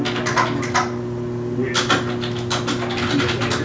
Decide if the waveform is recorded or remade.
recorded